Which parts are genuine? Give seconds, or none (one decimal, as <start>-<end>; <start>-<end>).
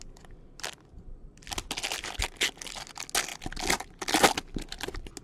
0.0-5.2